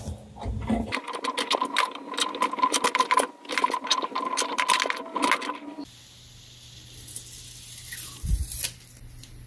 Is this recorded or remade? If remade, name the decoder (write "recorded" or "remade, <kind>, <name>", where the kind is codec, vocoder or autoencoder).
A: recorded